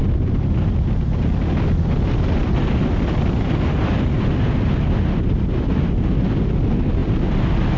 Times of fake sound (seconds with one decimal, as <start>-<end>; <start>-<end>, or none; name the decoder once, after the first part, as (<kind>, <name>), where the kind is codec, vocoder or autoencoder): none